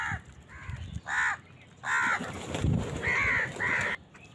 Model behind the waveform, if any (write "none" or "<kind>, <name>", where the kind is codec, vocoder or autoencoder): none